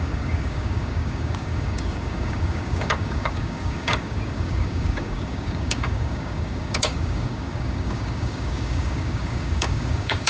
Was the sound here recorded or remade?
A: remade